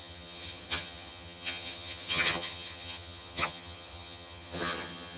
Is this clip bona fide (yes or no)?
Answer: no